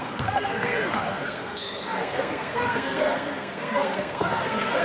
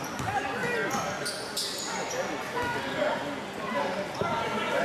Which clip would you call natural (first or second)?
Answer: second